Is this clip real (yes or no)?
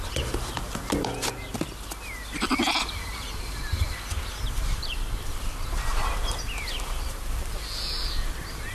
no